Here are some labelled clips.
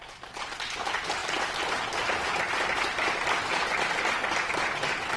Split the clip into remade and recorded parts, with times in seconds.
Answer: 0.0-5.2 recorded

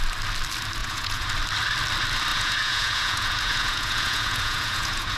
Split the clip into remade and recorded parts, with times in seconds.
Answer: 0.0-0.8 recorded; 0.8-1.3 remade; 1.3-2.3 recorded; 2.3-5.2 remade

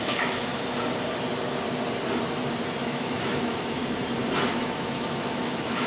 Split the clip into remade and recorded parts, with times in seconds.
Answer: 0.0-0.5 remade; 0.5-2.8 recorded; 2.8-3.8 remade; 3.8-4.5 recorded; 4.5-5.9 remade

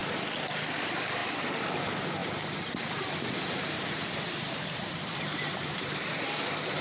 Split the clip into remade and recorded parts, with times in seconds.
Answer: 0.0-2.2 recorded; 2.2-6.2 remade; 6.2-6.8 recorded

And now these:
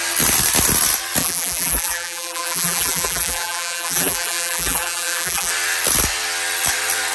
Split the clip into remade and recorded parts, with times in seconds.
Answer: 0.0-1.2 recorded; 1.2-5.5 remade; 5.5-7.1 recorded

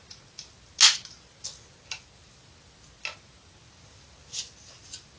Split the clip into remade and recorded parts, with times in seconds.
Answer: 0.0-5.2 recorded